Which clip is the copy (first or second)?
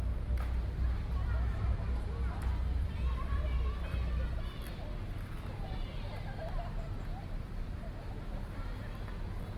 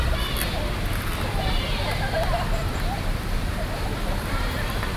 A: second